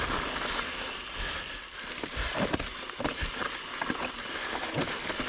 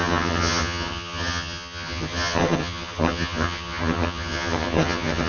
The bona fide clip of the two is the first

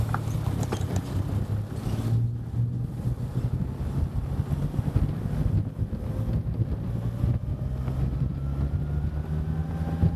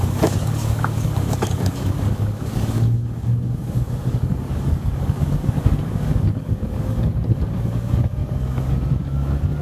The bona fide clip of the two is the first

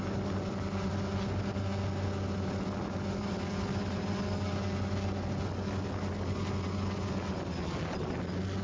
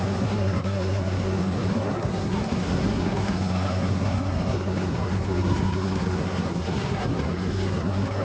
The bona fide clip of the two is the first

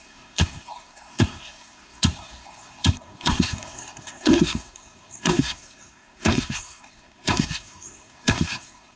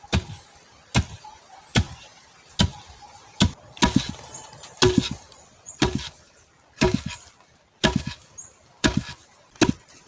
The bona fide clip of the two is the second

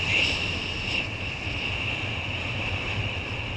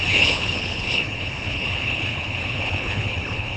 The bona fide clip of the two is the first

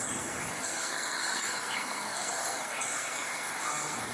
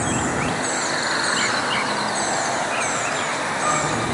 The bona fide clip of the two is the second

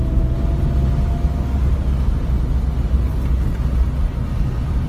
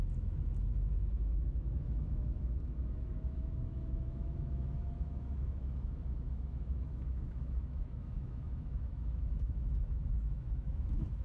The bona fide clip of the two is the first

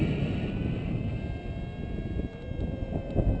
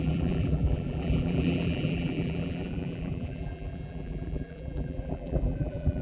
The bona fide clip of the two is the first